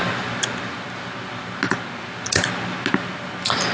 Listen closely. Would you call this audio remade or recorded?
recorded